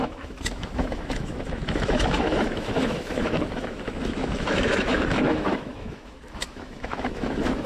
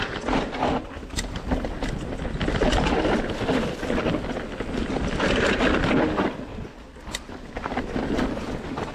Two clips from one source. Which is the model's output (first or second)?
first